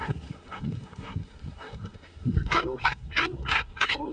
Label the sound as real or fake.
fake